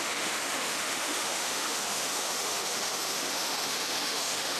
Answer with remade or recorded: remade